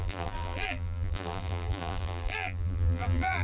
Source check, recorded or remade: remade